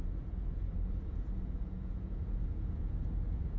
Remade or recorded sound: remade